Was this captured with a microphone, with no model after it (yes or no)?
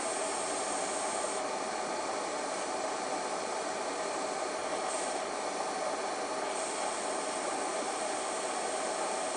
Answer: yes